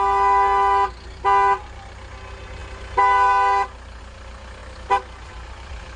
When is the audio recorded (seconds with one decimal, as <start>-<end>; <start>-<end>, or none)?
0.0-6.0